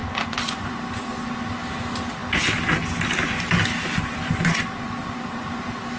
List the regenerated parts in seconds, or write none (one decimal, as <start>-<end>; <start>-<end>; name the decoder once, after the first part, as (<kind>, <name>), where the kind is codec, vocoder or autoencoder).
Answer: 0.0-0.8 (vocoder, Vocos)